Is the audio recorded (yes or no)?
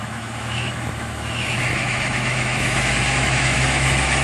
no